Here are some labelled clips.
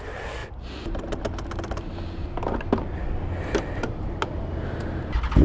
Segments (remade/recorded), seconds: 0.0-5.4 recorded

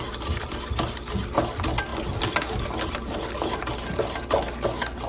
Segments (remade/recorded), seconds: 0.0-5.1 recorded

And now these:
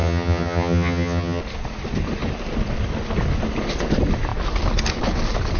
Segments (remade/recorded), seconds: 0.0-1.4 remade; 1.4-5.6 recorded

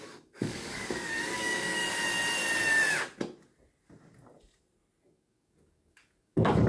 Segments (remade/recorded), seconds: 0.0-1.8 remade; 1.8-5.0 recorded; 5.0-6.7 remade

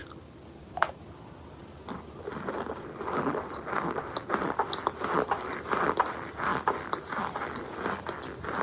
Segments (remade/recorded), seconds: 0.0-1.2 recorded; 1.2-6.5 remade; 6.5-8.6 recorded

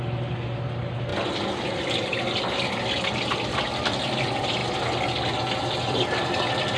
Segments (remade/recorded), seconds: 0.0-6.8 recorded